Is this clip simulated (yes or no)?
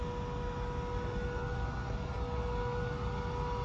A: no